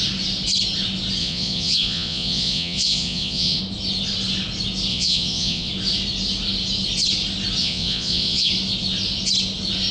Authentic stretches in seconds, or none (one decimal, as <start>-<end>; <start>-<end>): 0.0-1.2; 3.6-4.9; 5.7-7.6; 8.5-9.9